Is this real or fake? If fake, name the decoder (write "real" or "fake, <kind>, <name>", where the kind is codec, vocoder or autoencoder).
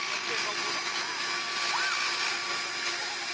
real